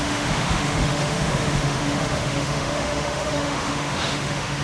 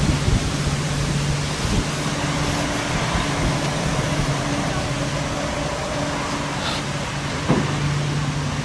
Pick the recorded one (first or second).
second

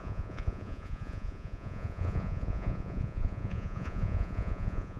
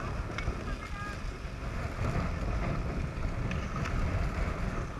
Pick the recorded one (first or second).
second